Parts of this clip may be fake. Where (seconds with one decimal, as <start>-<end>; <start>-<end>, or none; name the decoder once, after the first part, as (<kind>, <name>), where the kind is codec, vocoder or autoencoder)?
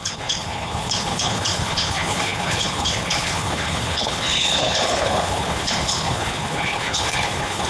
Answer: 0.0-7.7 (codec, HILCodec)